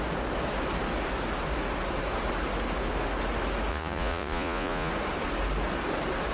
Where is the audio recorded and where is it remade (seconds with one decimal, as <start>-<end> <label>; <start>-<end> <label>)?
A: 0.0-3.7 recorded; 3.7-4.9 remade; 4.9-6.3 recorded

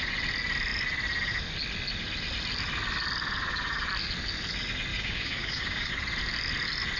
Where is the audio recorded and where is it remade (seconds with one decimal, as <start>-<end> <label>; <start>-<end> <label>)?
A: 0.0-4.9 recorded; 4.9-5.9 remade; 5.9-7.0 recorded

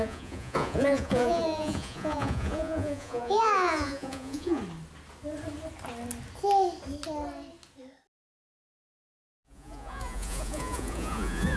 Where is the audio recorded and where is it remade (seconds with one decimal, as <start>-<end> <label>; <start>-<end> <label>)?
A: 0.0-4.6 remade; 4.6-8.4 recorded; 8.4-11.6 remade

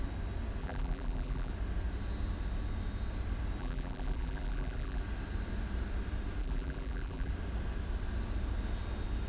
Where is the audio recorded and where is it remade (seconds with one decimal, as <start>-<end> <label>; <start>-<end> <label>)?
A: 0.0-0.6 recorded; 0.6-1.5 remade; 1.5-3.6 recorded; 3.6-5.0 remade; 5.0-6.4 recorded; 6.4-7.3 remade; 7.3-9.3 recorded

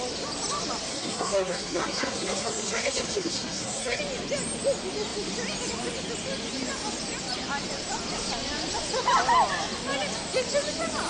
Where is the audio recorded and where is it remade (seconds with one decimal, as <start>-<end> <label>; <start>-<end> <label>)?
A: 0.0-0.9 recorded; 0.9-4.0 remade; 4.0-11.1 recorded

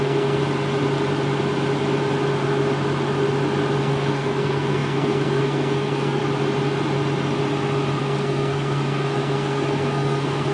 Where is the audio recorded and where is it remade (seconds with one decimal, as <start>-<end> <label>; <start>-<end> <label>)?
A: 0.0-0.4 remade; 0.4-3.8 recorded; 3.8-6.2 remade; 6.2-8.0 recorded; 8.0-10.5 remade

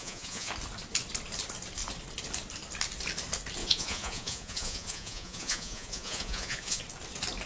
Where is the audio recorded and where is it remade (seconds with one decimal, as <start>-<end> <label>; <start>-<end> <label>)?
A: 0.0-0.5 remade; 0.5-3.6 recorded; 3.6-6.8 remade; 6.8-7.5 recorded